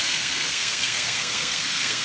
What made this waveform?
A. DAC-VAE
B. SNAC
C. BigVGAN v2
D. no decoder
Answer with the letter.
B